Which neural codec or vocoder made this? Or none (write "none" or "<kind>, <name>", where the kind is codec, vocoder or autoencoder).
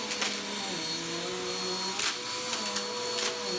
none